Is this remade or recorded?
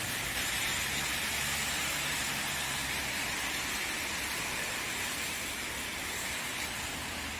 recorded